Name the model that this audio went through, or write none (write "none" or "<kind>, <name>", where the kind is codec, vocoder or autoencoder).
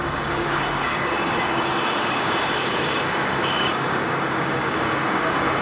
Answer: codec, DAC